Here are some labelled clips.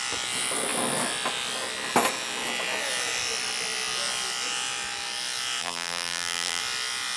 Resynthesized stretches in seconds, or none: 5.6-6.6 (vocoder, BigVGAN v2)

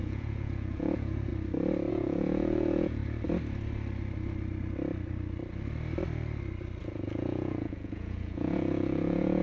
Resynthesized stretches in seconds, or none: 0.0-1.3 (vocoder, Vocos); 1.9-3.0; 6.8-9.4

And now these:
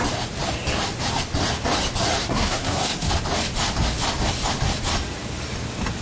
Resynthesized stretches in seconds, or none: 2.2-3.1 (codec, SNAC)

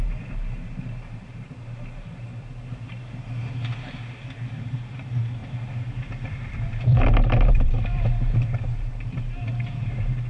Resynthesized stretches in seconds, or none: 0.0-2.6 (vocoder, BigVGAN v2); 4.5-10.3

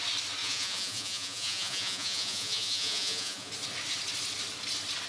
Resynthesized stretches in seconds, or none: 0.4-3.5 (vocoder, Vocos)